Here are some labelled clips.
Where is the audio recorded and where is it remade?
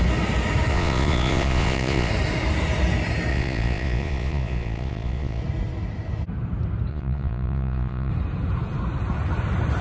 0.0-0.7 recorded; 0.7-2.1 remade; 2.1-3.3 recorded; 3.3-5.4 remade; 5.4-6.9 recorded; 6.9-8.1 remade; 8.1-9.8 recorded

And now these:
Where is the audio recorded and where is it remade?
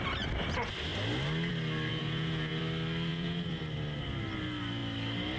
0.0-1.9 recorded; 1.9-2.6 remade; 2.6-3.1 recorded; 3.1-3.6 remade; 3.6-5.4 recorded